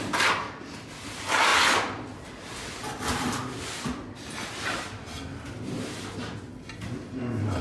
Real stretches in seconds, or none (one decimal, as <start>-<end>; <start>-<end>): 0.0-7.6